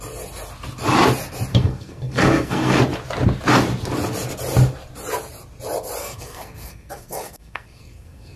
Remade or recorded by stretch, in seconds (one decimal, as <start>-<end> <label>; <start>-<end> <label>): 0.0-1.5 recorded; 1.5-2.8 remade; 2.8-6.0 recorded; 6.0-8.4 remade